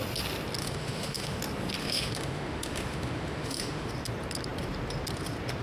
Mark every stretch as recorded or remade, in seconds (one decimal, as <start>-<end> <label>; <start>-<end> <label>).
0.0-0.6 recorded; 0.6-1.4 remade; 1.4-1.8 recorded; 1.8-3.9 remade; 3.9-5.6 recorded

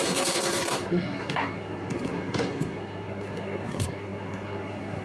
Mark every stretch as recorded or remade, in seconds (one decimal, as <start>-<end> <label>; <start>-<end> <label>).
0.0-5.0 remade

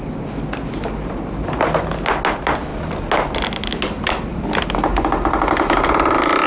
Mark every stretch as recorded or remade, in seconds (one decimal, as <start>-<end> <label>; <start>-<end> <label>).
0.0-6.5 recorded

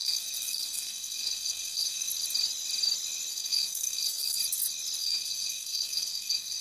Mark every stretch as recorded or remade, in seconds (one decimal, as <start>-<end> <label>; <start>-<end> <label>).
0.0-2.1 remade; 2.1-3.3 recorded; 3.3-4.4 remade; 4.4-5.0 recorded; 5.0-6.6 remade

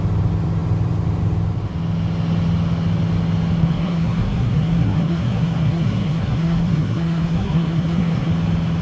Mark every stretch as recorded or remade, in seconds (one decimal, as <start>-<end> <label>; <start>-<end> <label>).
0.0-3.6 recorded; 3.6-8.3 remade; 8.3-8.8 recorded